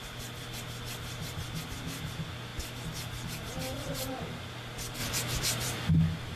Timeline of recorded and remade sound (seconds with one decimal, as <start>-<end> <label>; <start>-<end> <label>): 0.0-5.0 recorded; 5.0-5.9 remade; 5.9-6.4 recorded